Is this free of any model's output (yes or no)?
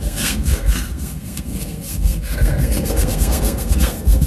no